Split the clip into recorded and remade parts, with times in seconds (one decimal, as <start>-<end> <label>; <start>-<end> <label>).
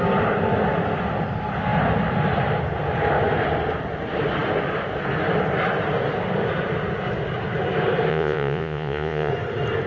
0.0-8.1 recorded; 8.1-9.3 remade; 9.3-9.9 recorded